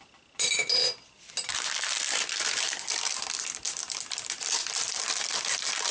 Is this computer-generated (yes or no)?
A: yes